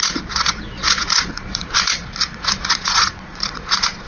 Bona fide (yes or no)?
no